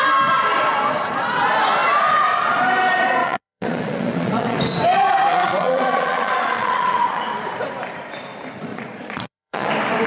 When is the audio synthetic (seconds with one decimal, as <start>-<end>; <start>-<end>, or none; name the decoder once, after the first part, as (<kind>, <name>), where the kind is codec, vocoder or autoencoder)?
3.2-4.6 (vocoder, Vocos); 5.3-7.2; 8.7-9.7

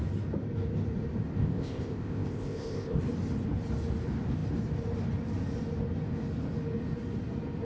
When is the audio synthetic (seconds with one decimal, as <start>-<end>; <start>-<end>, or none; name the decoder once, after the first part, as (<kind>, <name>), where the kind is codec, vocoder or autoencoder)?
1.4-3.0 (codec, ZipCodec)

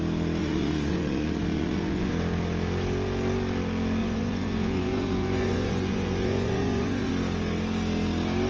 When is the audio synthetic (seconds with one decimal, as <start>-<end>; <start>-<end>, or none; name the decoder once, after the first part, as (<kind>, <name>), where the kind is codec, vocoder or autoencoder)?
0.4-2.1 (vocoder, Vocos); 4.0-7.1

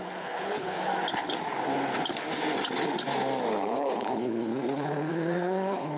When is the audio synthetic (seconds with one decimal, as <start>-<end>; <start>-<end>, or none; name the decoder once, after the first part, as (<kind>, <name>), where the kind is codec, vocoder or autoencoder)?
0.0-0.9 (codec, HILCodec); 3.5-4.5; 5.1-6.0

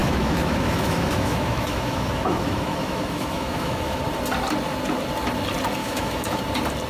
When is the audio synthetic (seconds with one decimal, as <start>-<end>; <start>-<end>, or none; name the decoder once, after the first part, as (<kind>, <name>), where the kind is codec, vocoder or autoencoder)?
0.0-4.0 (autoencoder, DAC-VAE); 5.8-6.4

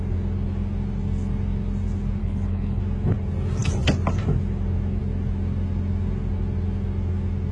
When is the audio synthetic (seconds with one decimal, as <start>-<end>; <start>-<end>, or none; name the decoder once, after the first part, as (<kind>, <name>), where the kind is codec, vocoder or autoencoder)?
2.2-2.8 (codec, HILCodec)

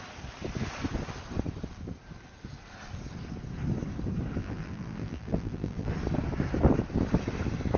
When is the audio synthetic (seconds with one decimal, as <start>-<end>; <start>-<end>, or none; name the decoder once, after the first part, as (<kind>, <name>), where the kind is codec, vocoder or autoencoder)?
4.4-5.9 (vocoder, BigVGAN v2)

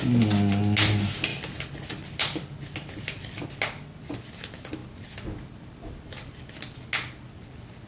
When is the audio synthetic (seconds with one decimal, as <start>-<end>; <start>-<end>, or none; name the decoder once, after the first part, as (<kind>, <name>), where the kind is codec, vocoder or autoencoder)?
none